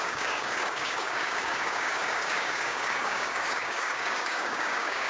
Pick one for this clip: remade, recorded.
remade